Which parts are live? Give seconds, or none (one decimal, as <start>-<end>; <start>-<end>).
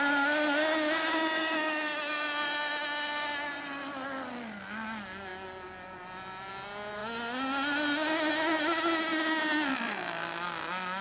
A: 0.0-11.0